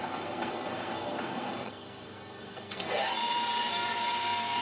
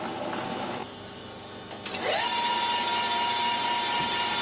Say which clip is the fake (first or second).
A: first